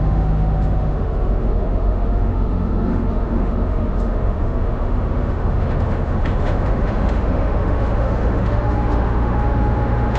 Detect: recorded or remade remade